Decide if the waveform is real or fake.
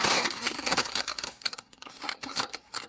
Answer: fake